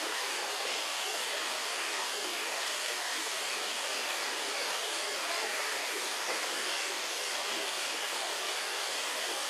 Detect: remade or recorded remade